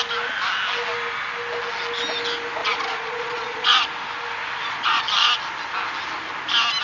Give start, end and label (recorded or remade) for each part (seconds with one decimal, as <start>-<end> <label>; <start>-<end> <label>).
0.0-2.6 recorded; 2.6-3.8 remade; 3.8-4.4 recorded; 4.4-5.0 remade; 5.0-6.8 recorded